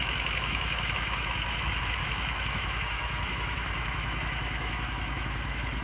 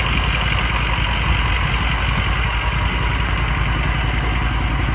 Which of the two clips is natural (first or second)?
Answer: second